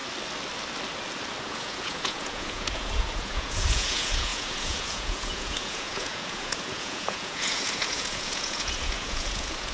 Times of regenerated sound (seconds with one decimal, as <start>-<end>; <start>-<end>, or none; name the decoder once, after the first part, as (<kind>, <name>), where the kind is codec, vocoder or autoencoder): 1.4-9.7 (vocoder, Vocos)